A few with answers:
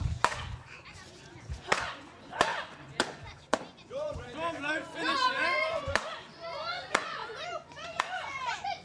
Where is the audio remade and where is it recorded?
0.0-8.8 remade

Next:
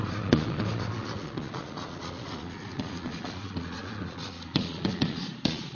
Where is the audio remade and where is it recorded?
0.0-5.7 remade

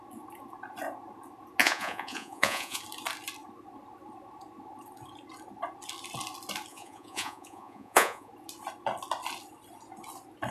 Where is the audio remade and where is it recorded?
0.0-1.6 recorded; 1.6-2.8 remade; 2.8-6.7 recorded; 6.7-8.3 remade; 8.3-10.5 recorded

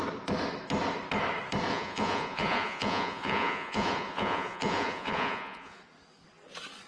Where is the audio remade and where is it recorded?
0.0-1.7 recorded; 1.7-5.8 remade; 5.8-6.9 recorded

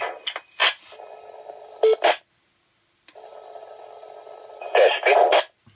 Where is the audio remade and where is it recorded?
0.0-5.7 recorded

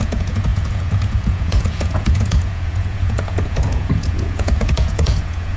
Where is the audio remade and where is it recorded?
0.0-5.6 remade